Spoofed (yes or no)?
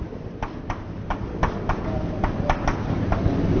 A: no